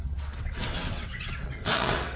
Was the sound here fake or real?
fake